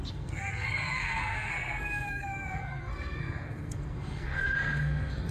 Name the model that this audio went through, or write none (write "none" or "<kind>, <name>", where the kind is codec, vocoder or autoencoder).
codec, SNAC